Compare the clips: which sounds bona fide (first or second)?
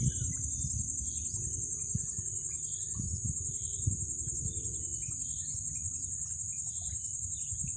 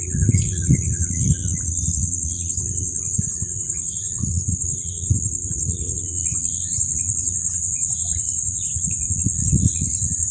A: first